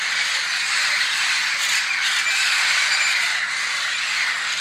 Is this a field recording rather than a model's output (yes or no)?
yes